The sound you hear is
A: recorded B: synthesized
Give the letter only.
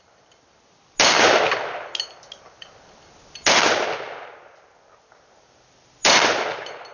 A